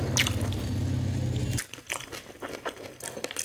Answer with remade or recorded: recorded